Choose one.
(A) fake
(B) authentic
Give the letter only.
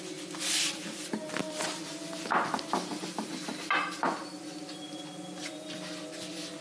B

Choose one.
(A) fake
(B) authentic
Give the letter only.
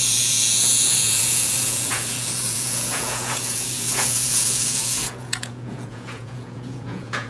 A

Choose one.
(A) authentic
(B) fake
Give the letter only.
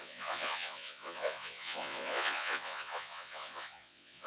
B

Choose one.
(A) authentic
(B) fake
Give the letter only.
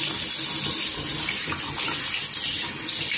A